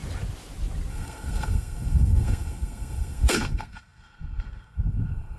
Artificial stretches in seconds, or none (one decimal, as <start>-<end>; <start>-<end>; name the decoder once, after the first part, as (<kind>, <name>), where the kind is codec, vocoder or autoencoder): 0.9-5.4 (codec, SNAC)